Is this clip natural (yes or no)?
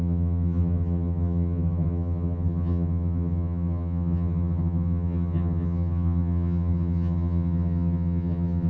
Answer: no